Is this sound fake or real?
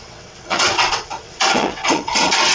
fake